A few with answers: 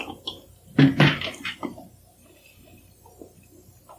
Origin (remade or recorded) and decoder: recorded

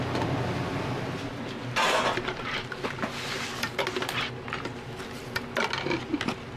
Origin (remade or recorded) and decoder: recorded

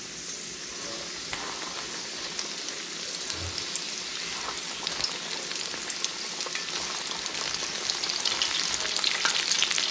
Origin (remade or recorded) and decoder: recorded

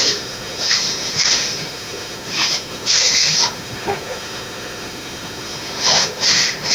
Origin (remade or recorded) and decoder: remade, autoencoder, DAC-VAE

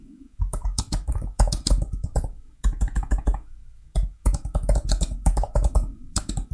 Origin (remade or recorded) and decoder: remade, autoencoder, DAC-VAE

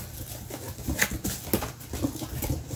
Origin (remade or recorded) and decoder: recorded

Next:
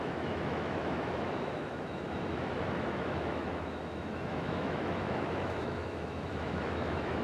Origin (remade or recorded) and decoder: remade, autoencoder, DAC-VAE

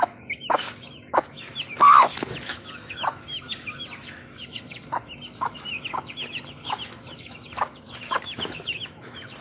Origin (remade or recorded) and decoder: remade, autoencoder, DAC-VAE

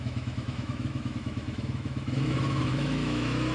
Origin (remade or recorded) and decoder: remade, autoencoder, DAC-VAE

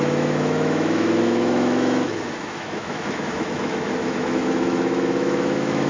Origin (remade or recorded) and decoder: remade, autoencoder, DAC-VAE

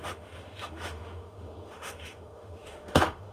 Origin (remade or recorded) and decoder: remade, autoencoder, DAC-VAE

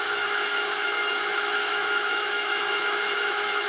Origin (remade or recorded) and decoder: remade, autoencoder, DAC-VAE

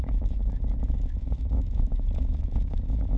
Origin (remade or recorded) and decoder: remade, autoencoder, DAC-VAE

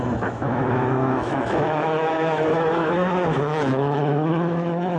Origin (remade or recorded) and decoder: remade, autoencoder, DAC-VAE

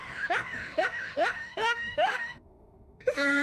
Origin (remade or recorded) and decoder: remade, autoencoder, DAC-VAE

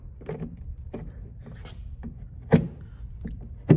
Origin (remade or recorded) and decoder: recorded